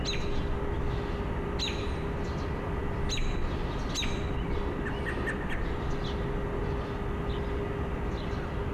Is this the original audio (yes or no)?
yes